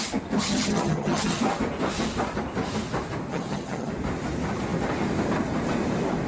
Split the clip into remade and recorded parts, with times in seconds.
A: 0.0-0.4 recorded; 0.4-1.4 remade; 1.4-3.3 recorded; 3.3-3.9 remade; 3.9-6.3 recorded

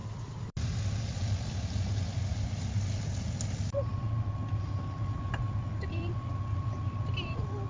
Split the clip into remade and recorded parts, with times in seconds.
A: 0.0-7.7 recorded

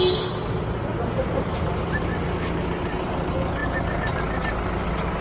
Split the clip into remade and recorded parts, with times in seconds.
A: 0.0-5.2 recorded